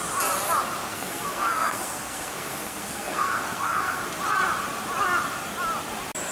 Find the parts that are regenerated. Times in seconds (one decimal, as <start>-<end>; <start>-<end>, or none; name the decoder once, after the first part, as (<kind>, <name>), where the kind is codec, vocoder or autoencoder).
0.8-4.0 (codec, SNAC)